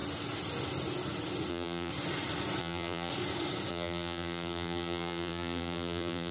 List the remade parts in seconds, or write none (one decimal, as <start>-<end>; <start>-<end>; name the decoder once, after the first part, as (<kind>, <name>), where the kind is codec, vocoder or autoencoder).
1.5-1.9 (vocoder, BigVGAN v2); 2.6-3.1; 3.7-6.3